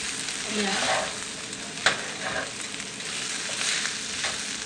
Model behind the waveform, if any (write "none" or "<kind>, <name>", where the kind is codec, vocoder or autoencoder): none